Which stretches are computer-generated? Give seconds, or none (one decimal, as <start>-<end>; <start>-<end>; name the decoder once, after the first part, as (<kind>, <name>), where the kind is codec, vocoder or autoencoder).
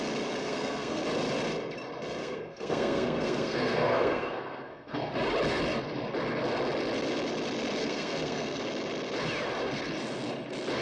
0.4-1.0 (codec, SNAC); 2.2-5.1; 7.8-8.6